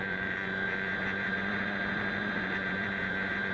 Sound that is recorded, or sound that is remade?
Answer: remade